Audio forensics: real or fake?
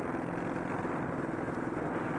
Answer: real